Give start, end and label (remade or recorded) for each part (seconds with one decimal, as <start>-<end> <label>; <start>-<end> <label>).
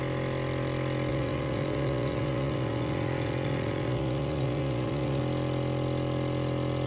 0.0-1.1 recorded; 1.1-5.2 remade; 5.2-6.9 recorded